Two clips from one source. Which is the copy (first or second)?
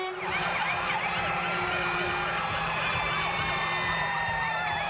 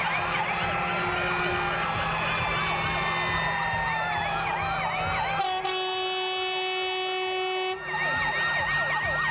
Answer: first